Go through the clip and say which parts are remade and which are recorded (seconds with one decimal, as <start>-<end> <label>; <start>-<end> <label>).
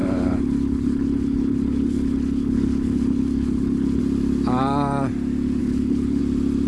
0.0-4.0 remade; 4.0-5.6 recorded; 5.6-6.2 remade; 6.2-6.7 recorded